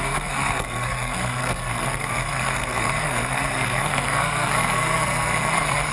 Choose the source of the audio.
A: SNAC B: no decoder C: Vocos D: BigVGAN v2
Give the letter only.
A